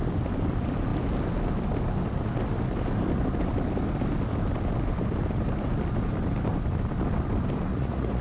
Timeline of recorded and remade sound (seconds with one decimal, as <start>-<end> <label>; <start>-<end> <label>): 0.0-7.7 recorded; 7.7-8.2 remade